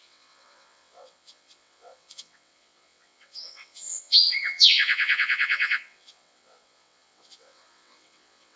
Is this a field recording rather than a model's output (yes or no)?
no